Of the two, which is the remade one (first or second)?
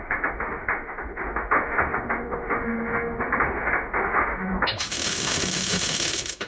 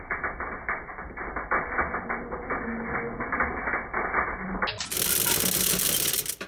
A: first